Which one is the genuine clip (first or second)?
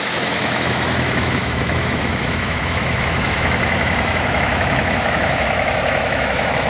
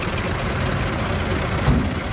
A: second